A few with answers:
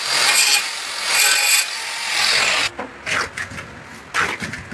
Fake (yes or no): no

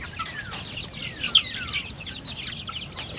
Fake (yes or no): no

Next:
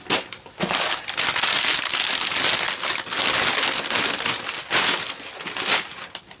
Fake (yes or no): no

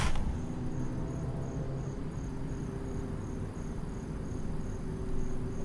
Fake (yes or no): no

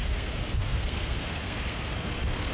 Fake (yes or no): yes